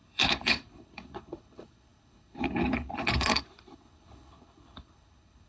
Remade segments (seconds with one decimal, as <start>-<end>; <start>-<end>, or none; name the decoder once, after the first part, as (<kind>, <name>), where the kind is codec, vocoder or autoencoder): 0.0-5.5 (codec, HILCodec)